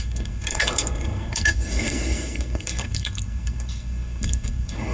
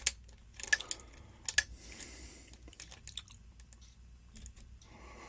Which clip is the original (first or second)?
second